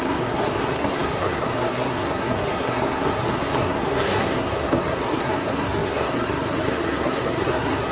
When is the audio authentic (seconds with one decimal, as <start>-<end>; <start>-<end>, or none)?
none